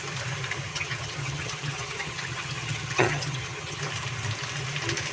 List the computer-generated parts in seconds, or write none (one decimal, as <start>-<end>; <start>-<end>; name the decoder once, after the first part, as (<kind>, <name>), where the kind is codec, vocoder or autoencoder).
0.7-3.8 (vocoder, HiFi-GAN)